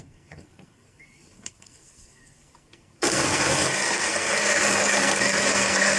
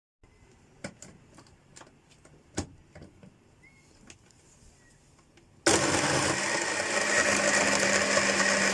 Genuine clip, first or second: second